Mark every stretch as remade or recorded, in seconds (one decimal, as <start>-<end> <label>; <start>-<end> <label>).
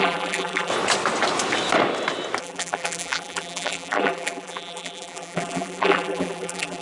0.0-0.7 remade; 0.7-2.4 recorded; 2.4-6.8 remade